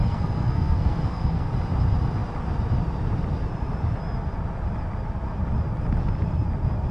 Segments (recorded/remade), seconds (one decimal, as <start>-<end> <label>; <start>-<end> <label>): 0.0-1.5 remade; 1.5-6.9 recorded